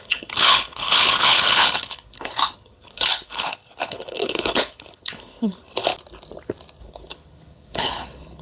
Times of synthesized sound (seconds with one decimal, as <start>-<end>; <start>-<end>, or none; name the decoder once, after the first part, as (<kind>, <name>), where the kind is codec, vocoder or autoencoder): 0.0-5.9 (codec, HILCodec); 6.8-8.4